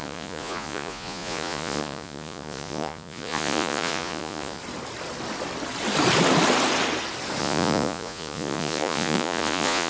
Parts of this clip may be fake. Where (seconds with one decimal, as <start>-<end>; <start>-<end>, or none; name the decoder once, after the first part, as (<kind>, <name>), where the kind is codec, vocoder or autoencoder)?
0.0-4.6 (vocoder, Vocos); 7.4-9.9